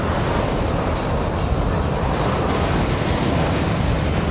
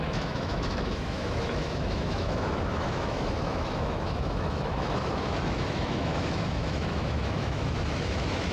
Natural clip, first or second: first